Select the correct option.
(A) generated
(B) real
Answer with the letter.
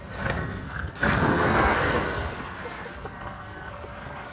A